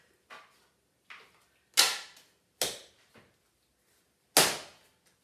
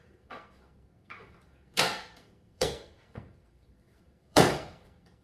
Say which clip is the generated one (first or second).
second